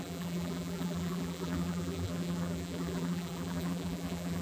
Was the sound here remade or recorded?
remade